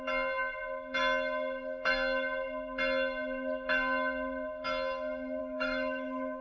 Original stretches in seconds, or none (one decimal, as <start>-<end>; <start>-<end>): 0.0-5.4